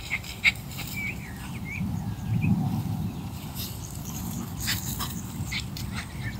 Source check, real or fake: fake